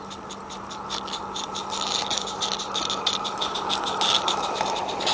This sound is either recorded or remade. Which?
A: recorded